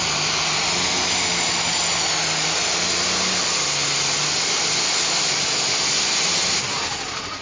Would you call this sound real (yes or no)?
yes